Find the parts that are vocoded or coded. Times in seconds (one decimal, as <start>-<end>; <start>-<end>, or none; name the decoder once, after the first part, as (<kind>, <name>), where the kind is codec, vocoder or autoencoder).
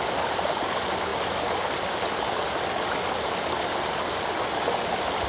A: none